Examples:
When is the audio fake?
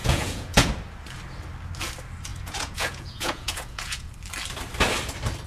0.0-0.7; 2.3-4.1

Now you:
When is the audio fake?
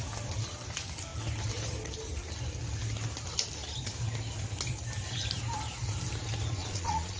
6.6-7.2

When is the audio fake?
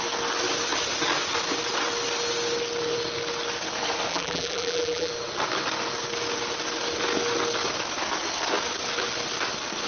4.1-5.1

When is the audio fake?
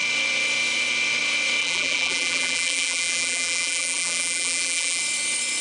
1.6-5.0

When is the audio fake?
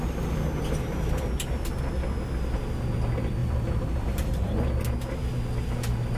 3.4-4.6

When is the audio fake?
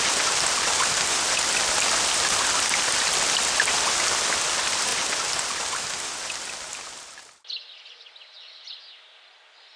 none